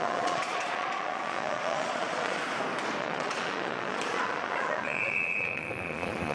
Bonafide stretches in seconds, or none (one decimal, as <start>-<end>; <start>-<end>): 2.4-3.0

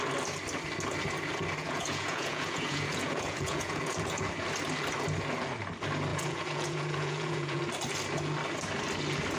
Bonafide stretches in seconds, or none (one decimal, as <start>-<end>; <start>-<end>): 0.0-1.6; 4.3-6.1; 7.6-9.4

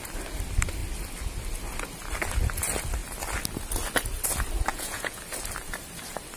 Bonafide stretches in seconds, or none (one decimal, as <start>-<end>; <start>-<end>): 0.0-4.7; 5.2-6.4